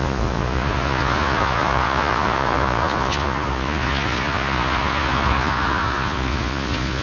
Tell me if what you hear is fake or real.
fake